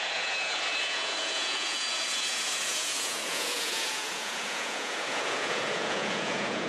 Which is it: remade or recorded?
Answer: remade